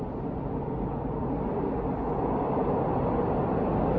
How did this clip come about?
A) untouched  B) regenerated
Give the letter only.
A